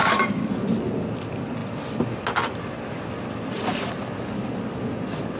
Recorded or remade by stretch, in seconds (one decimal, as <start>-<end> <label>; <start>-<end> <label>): 0.0-0.5 remade; 0.5-5.4 recorded